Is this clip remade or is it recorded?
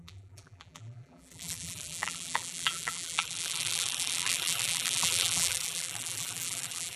remade